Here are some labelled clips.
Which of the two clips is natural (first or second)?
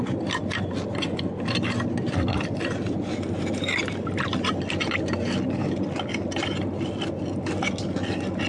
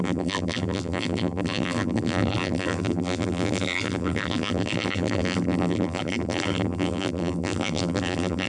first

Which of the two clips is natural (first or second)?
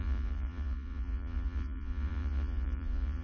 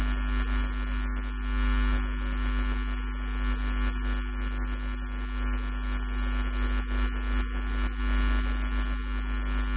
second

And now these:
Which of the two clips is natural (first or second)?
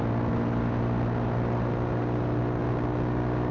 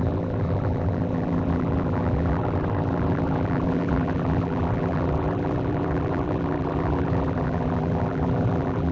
first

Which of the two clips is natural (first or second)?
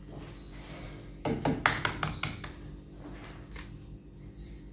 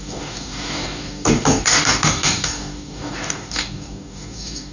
first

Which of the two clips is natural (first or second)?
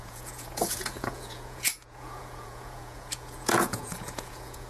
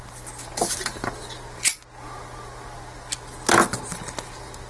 second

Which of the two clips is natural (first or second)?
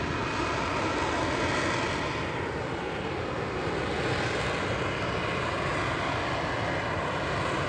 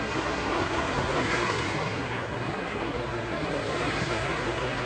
first